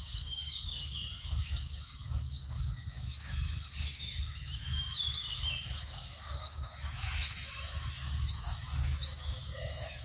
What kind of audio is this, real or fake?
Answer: fake